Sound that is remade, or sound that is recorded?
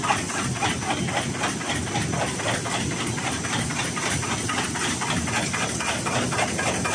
recorded